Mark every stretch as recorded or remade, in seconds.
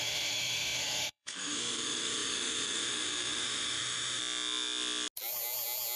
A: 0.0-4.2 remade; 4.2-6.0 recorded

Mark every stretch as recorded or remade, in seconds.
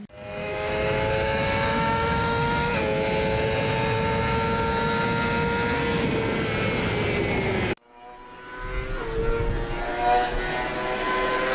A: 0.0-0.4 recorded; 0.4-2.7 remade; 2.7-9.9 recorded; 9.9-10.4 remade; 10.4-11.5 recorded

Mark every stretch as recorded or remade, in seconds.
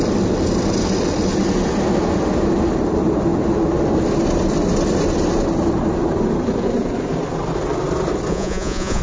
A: 0.0-8.3 recorded; 8.3-9.0 remade